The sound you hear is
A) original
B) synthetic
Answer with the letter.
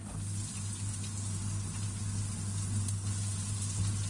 A